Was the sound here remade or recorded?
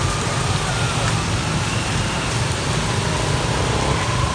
recorded